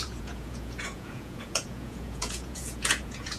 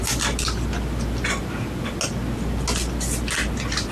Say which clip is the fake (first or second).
first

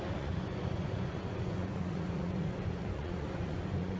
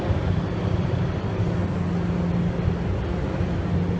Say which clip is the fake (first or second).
first